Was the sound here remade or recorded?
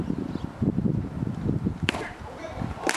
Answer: remade